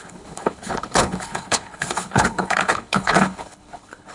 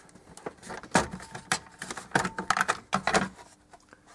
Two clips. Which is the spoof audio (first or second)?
first